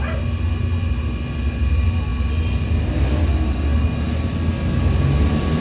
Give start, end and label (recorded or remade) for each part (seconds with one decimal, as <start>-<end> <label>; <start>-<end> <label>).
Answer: 0.0-5.6 recorded